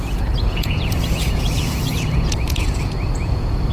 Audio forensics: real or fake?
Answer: fake